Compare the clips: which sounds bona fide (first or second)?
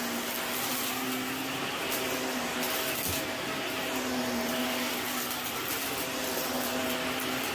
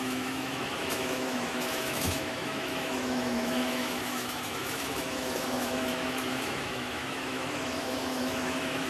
first